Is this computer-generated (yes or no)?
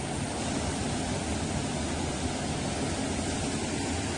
no